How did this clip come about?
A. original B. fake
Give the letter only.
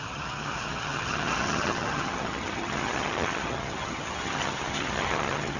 B